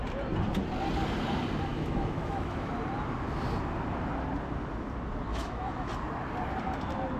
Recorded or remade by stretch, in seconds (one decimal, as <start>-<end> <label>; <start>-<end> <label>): 0.0-1.7 recorded; 1.7-2.7 remade; 2.7-5.3 recorded; 5.3-5.9 remade; 5.9-7.2 recorded